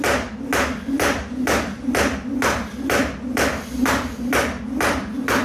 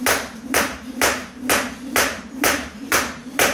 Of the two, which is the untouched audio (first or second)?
first